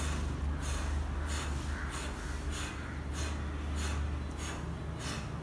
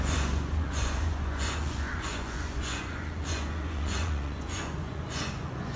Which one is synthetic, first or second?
second